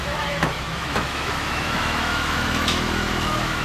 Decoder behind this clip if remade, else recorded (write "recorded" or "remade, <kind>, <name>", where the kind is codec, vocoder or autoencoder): remade, autoencoder, DAC-VAE